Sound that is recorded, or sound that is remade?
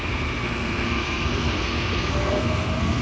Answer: remade